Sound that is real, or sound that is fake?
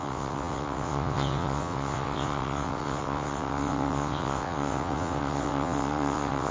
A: fake